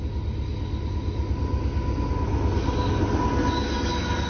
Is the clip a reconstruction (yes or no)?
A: no